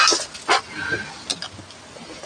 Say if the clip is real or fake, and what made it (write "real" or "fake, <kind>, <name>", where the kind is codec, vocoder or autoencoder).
real